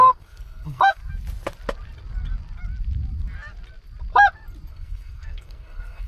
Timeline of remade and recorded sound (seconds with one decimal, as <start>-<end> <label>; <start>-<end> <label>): 0.0-1.0 remade; 1.0-4.7 recorded; 4.7-6.1 remade